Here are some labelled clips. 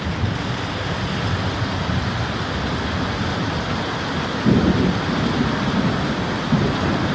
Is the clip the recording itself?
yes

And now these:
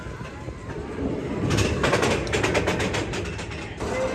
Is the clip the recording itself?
yes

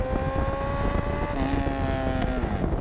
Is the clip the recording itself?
yes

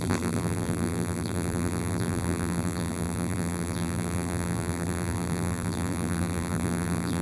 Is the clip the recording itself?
no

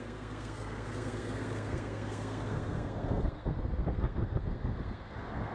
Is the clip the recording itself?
no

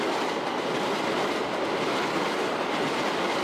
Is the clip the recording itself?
yes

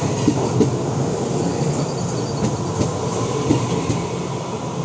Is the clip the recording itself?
yes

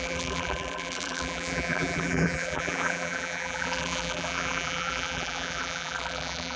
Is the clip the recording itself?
no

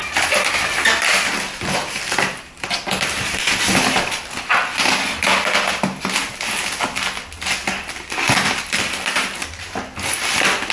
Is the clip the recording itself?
yes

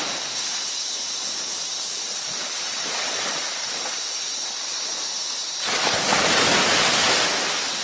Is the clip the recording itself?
yes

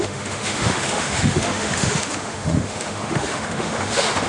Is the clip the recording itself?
no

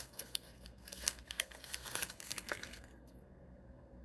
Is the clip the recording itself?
no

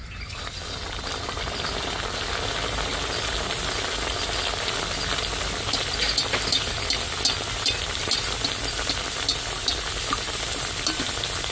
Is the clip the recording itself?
yes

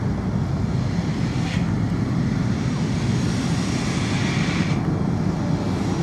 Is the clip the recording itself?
yes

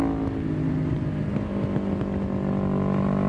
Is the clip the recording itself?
yes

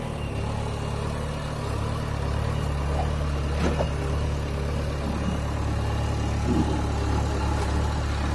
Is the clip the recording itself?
yes